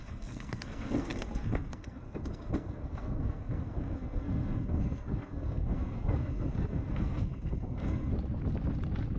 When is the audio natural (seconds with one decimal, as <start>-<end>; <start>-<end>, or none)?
8.1-9.2